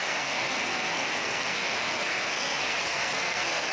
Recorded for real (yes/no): no